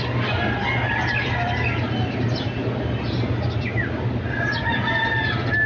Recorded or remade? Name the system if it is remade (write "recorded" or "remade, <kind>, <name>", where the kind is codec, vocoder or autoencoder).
recorded